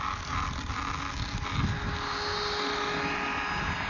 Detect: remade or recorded recorded